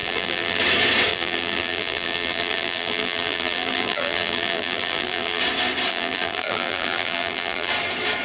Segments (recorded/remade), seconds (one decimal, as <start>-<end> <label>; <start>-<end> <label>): 0.0-0.6 remade; 0.6-1.1 recorded; 1.1-5.4 remade; 5.4-5.9 recorded; 5.9-7.7 remade; 7.7-8.2 recorded